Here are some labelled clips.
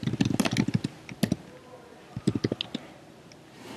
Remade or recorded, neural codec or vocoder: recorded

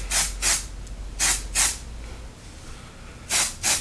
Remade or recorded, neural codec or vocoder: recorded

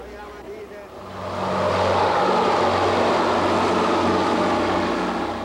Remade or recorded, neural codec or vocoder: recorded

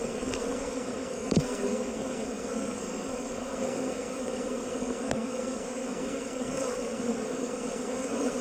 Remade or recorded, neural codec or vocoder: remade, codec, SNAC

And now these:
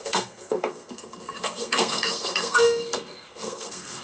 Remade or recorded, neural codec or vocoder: remade, codec, SNAC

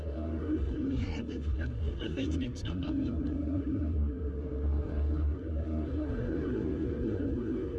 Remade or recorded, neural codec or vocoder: remade, codec, SNAC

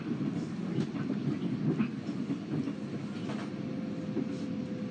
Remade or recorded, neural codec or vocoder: recorded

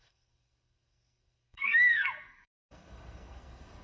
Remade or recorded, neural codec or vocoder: remade, codec, SNAC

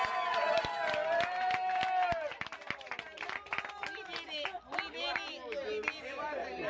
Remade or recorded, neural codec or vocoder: recorded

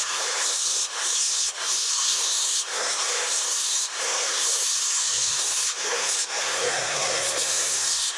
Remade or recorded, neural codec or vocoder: remade, codec, SNAC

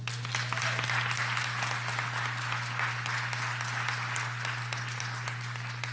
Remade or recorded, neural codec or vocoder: recorded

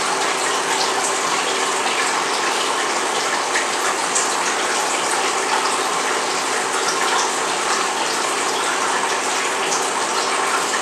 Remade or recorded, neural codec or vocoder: recorded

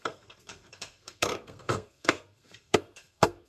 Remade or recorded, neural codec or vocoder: remade, codec, SNAC